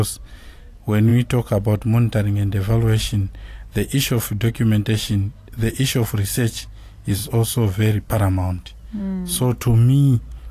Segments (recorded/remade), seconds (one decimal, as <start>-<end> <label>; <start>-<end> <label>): 0.0-10.5 recorded